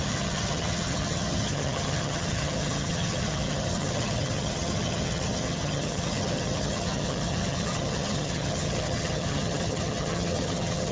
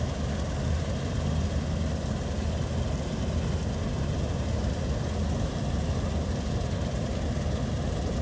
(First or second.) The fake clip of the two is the first